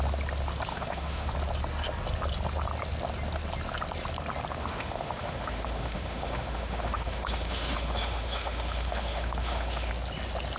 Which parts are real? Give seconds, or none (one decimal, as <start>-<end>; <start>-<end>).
0.0-0.7; 1.3-4.6; 9.9-10.6